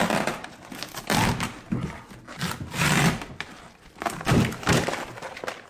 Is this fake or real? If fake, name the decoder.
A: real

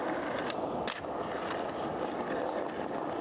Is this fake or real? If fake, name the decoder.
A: real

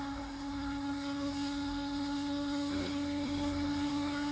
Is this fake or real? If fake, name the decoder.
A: fake, codec, SNAC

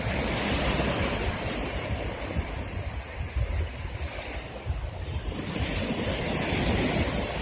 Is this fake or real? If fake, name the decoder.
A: fake, vocoder, BigVGAN v2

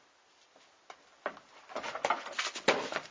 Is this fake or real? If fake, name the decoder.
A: real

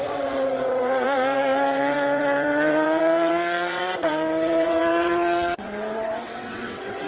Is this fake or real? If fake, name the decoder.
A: fake, vocoder, WaveNeXt